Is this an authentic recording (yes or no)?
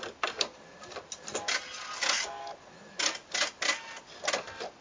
yes